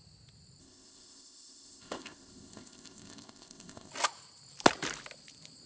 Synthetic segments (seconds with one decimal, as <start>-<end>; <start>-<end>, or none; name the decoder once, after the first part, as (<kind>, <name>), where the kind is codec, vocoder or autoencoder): 0.6-3.9 (codec, ZipCodec)